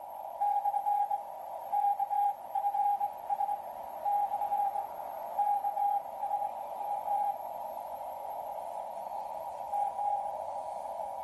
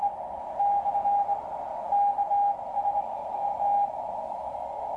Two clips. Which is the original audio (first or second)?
second